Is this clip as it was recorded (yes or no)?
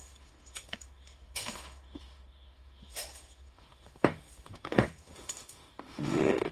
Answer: no